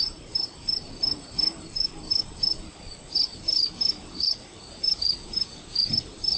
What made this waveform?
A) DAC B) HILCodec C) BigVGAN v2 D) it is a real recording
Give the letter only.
C